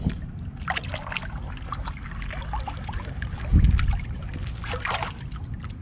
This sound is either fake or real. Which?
real